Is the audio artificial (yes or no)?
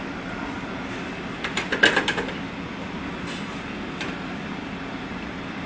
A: no